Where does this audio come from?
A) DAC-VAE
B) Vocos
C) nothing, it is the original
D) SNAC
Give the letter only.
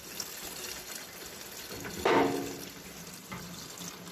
C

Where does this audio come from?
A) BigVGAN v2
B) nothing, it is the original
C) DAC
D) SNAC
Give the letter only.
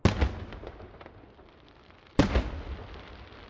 B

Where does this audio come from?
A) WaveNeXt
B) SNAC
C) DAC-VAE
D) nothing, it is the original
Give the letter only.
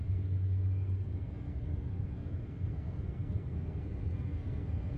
B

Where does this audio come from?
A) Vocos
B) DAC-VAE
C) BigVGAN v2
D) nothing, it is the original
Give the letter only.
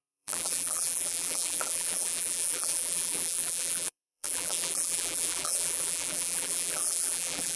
C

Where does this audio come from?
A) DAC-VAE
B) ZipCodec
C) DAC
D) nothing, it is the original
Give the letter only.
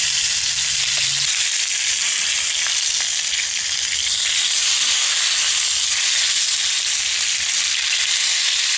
D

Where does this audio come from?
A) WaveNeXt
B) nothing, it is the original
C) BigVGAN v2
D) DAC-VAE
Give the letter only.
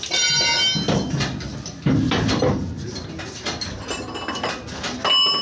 B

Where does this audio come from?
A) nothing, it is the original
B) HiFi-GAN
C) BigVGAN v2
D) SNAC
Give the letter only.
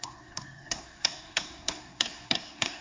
D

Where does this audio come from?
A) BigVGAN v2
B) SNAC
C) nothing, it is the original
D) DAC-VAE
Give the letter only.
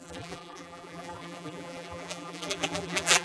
A